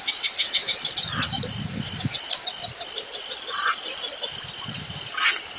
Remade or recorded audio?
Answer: recorded